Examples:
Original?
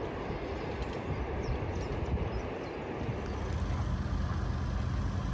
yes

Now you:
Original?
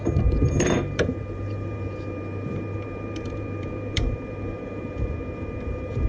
no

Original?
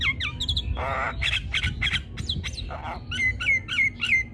yes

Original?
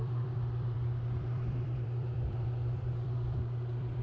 no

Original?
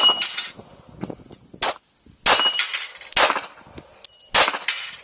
yes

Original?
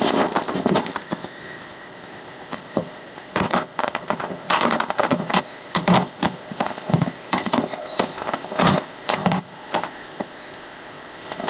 no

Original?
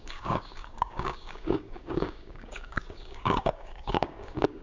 no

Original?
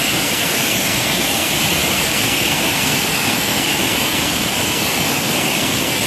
no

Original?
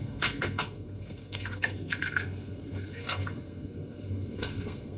no